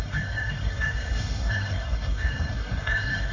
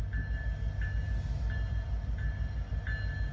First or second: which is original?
second